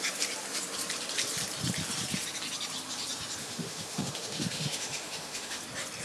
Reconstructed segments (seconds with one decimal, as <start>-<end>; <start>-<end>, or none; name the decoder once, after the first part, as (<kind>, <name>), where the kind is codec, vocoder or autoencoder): 3.4-5.6 (autoencoder, DAC-VAE)